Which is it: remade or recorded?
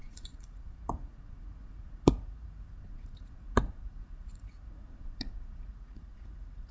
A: remade